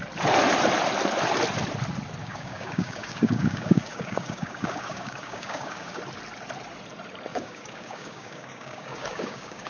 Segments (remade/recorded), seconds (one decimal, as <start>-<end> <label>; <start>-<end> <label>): 0.0-2.2 recorded; 2.2-6.0 remade; 6.0-7.3 recorded; 7.3-9.7 remade